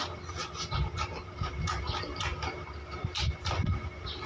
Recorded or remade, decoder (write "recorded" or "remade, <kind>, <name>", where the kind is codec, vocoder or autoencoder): recorded